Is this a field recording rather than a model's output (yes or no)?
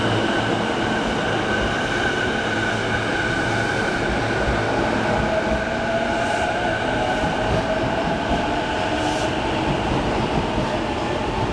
yes